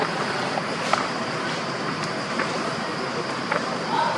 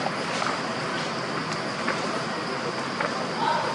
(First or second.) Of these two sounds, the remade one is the first